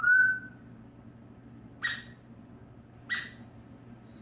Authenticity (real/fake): real